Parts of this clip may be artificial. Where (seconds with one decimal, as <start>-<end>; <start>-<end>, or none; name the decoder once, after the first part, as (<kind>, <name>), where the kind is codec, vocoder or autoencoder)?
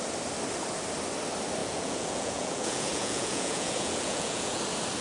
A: 1.6-4.6 (vocoder, Vocos)